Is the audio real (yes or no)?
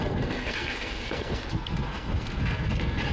no